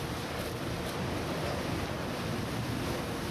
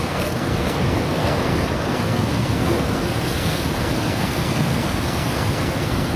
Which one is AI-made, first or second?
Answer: second